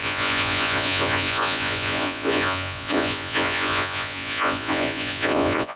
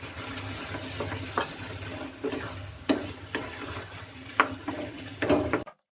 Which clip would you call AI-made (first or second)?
first